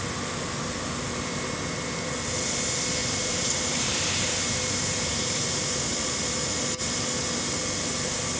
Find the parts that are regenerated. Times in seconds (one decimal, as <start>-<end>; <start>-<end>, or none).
3.0-6.2